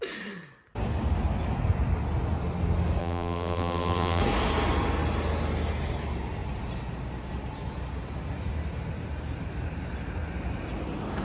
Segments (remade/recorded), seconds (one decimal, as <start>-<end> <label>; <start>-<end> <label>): 0.0-3.0 recorded; 3.0-4.2 remade; 4.2-11.2 recorded